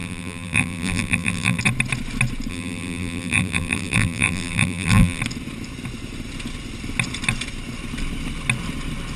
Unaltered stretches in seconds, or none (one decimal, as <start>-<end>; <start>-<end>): 1.6-2.5; 5.2-9.2